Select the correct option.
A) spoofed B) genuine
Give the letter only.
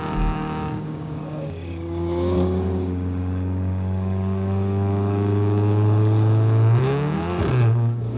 A